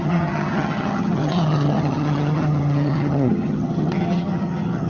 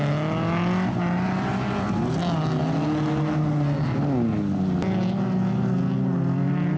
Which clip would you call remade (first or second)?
first